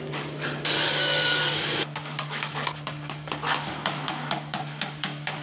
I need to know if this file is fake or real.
fake